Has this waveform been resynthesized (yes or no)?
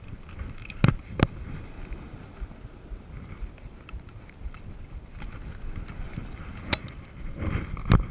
no